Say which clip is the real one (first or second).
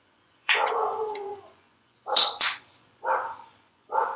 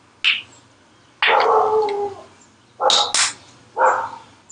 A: second